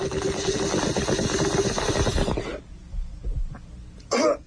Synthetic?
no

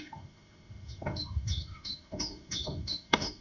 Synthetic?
yes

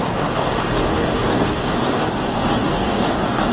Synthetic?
yes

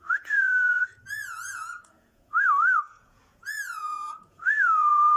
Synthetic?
yes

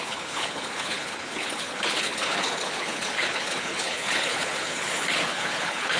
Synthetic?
yes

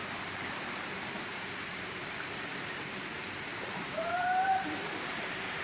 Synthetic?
yes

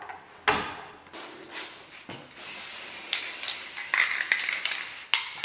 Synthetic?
no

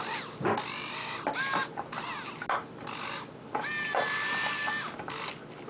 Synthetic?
no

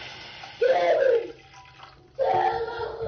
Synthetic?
no